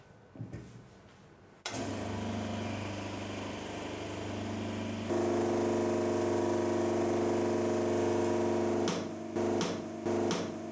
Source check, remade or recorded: recorded